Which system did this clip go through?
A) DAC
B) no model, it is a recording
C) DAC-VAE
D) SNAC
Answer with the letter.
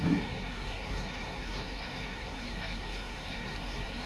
D